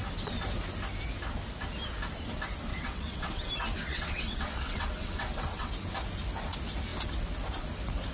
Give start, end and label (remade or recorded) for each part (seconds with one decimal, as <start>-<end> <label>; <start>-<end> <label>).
0.0-2.7 recorded; 2.7-3.5 remade; 3.5-3.9 recorded; 3.9-5.7 remade; 5.7-8.1 recorded